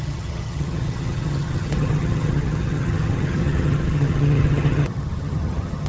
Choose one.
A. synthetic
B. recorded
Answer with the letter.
A